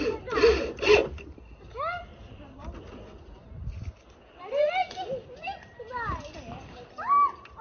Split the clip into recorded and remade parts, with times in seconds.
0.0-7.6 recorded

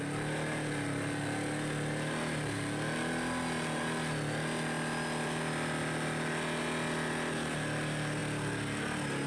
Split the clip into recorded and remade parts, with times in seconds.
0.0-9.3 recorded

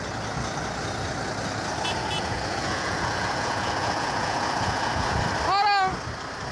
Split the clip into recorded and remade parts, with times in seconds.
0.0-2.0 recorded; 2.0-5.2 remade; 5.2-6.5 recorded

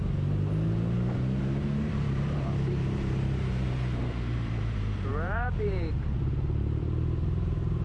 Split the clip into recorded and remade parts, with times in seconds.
0.0-1.4 recorded; 1.4-7.8 remade

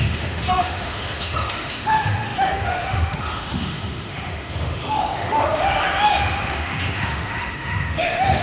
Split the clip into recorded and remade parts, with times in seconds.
0.0-8.4 remade

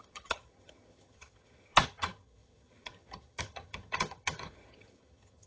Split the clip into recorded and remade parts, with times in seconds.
0.0-5.5 remade

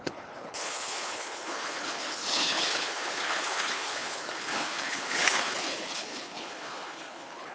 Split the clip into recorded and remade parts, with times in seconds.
0.0-7.5 remade

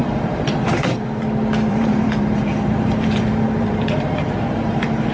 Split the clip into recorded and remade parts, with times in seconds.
0.0-1.2 remade; 1.2-1.7 recorded; 1.7-5.1 remade